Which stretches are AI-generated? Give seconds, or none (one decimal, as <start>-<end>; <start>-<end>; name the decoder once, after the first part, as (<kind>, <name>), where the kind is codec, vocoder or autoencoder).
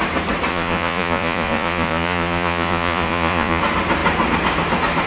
0.5-3.6 (vocoder, Vocos)